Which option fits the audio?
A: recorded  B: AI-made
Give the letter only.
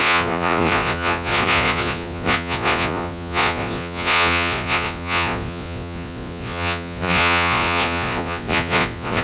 B